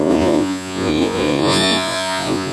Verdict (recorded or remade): remade